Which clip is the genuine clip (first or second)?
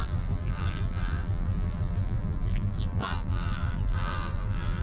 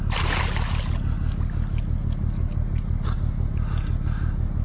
second